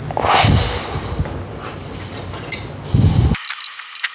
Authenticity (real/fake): real